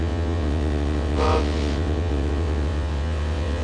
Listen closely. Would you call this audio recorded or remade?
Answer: remade